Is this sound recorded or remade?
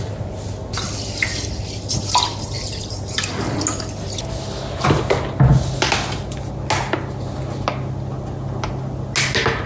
recorded